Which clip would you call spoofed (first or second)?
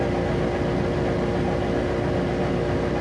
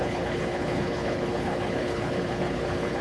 second